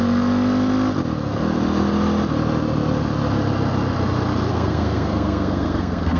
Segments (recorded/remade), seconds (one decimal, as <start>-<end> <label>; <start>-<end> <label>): 0.0-4.5 recorded; 4.5-6.2 remade